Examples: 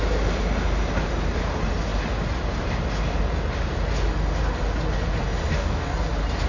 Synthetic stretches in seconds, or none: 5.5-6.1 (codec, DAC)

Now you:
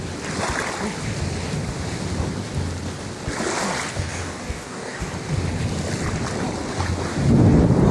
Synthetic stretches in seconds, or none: 3.9-5.1 (codec, DAC)

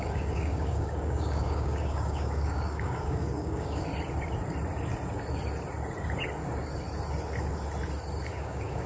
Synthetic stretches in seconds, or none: 0.0-3.9 (codec, DAC); 8.3-8.9

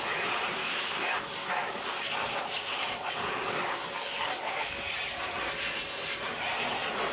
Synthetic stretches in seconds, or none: 0.6-4.9 (codec, DAC)

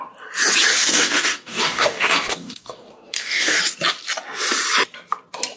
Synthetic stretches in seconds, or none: 0.7-3.6 (codec, DAC)

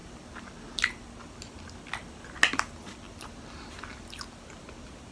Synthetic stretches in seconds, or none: none